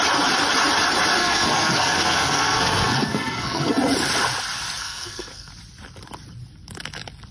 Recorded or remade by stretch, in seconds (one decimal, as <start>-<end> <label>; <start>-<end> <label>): 0.0-1.2 recorded; 1.2-3.7 remade; 3.7-4.8 recorded; 4.8-5.5 remade; 5.5-7.3 recorded